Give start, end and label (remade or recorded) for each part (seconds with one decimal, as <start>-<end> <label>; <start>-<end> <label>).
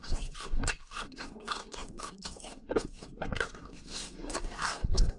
0.0-5.2 remade